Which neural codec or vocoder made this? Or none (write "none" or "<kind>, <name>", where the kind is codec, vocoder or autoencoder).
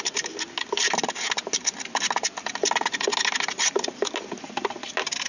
none